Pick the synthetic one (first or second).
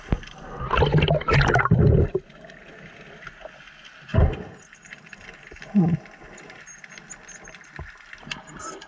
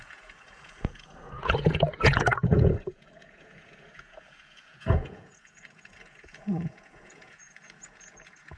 second